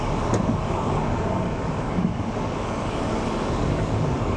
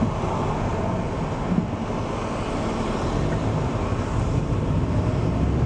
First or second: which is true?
second